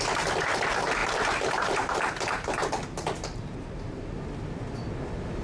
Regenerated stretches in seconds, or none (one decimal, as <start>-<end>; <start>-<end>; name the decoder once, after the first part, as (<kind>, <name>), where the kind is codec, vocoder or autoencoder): 1.0-4.2 (vocoder, BigVGAN v2)